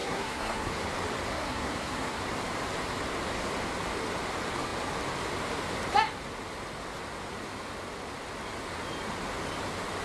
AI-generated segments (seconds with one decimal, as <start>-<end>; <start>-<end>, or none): 0.0-0.8; 1.3-2.2